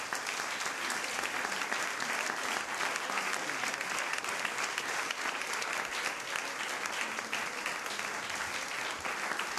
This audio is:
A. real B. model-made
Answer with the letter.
A